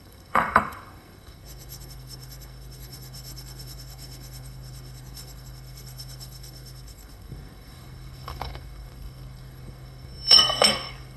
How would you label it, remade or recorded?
remade